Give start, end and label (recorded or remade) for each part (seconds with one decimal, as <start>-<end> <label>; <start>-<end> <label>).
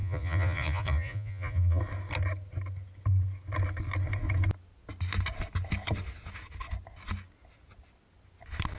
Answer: 0.0-1.8 remade; 1.8-8.8 recorded